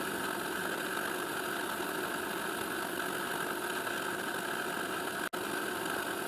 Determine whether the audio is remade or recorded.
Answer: recorded